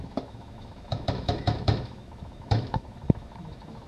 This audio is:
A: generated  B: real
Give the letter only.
A